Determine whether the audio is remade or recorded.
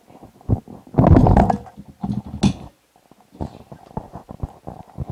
recorded